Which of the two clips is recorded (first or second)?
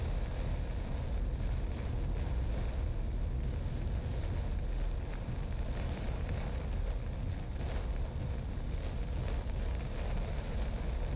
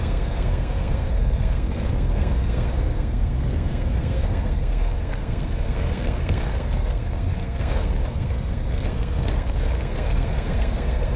first